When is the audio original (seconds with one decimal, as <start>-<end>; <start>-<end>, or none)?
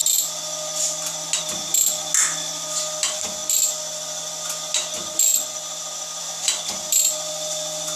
0.0-8.0